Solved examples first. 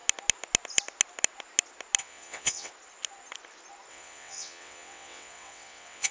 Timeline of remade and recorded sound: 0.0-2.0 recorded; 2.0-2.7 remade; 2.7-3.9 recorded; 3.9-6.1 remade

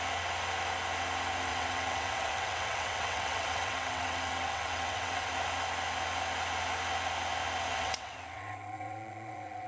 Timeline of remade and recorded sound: 0.0-1.5 recorded; 1.5-5.3 remade; 5.3-7.7 recorded; 7.7-9.7 remade

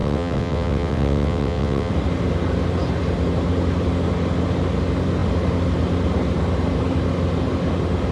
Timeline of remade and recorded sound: 0.0-1.9 remade; 1.9-8.1 recorded

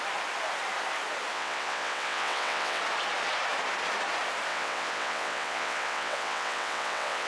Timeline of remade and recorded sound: 0.0-1.3 recorded; 1.3-2.8 remade; 2.8-4.5 recorded; 4.5-7.3 remade